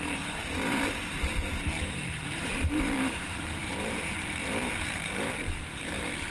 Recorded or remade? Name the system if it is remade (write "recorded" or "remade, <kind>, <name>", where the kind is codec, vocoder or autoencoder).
remade, vocoder, BigVGAN v2